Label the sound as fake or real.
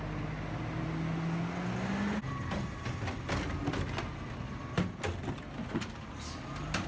real